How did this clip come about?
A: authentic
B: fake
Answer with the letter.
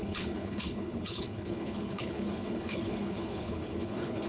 B